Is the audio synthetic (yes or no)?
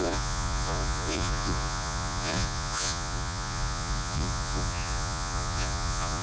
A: yes